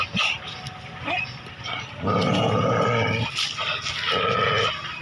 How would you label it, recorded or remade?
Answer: recorded